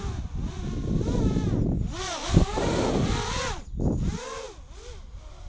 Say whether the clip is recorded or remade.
recorded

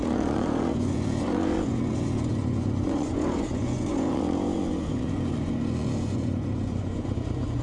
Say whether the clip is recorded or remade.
remade